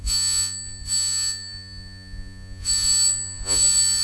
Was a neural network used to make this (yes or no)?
yes